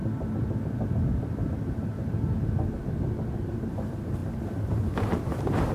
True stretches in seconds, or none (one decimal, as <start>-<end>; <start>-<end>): 0.0-1.0; 1.9-3.5